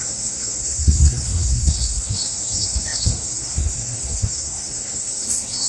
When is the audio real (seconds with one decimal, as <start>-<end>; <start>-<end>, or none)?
none

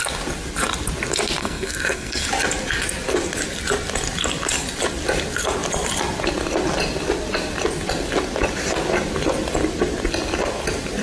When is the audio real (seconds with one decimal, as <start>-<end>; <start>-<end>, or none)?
0.0-1.4; 2.3-11.0

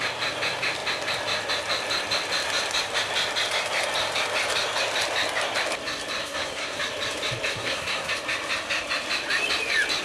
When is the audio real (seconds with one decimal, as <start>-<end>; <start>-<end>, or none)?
0.0-6.2; 6.8-7.5; 8.1-10.0